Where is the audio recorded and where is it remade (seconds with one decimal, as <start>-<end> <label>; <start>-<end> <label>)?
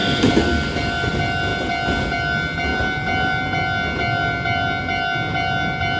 0.0-6.0 recorded